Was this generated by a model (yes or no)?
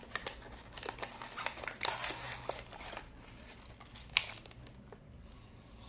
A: no